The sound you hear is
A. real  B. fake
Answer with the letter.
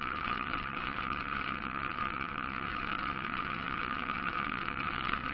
B